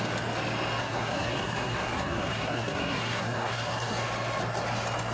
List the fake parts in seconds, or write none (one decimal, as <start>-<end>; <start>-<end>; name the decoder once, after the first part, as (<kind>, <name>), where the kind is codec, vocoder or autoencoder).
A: 0.8-3.9 (codec, SNAC)